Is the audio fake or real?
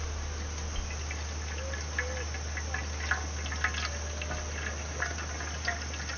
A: real